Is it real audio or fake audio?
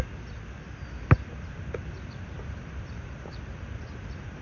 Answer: real